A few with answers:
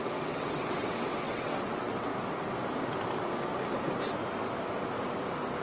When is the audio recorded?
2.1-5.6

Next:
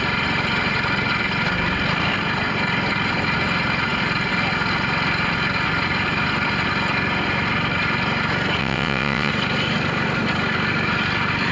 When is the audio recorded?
0.0-8.6; 9.3-11.5

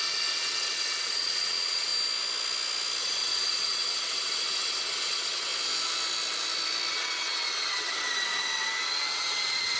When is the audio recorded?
1.9-3.0; 5.5-6.9

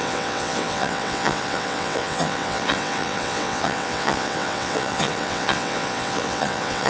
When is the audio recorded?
none

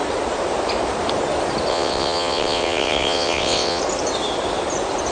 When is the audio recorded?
0.0-1.7; 3.8-5.1